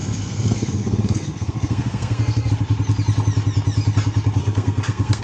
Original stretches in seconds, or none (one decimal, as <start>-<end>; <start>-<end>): 2.5-4.4